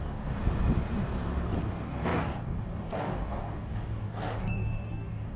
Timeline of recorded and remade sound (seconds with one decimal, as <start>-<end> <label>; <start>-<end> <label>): 0.0-0.4 remade; 0.4-1.7 recorded; 1.7-5.4 remade